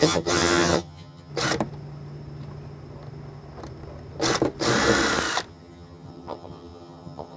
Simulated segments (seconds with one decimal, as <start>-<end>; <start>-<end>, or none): 0.0-1.3; 5.5-7.4